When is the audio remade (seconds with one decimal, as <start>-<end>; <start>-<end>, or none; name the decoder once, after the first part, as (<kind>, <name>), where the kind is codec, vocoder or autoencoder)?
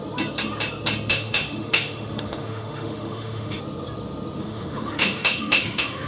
1.1-3.6 (autoencoder, DAC-VAE); 4.4-6.1